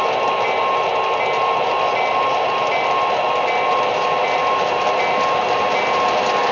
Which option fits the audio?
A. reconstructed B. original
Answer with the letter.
B